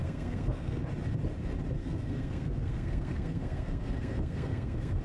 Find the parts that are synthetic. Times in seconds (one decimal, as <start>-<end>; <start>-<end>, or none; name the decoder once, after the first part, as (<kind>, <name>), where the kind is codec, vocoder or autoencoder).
0.0-0.8 (codec, SNAC); 1.8-5.0